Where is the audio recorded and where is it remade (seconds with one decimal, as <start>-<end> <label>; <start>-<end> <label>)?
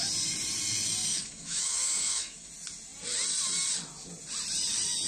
0.0-1.1 recorded; 1.1-2.5 remade; 2.5-5.1 recorded